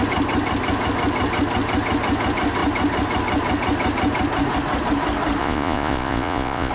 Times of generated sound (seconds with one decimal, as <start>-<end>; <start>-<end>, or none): 5.4-6.7